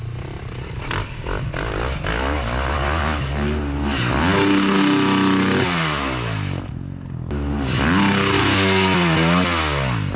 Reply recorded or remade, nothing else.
recorded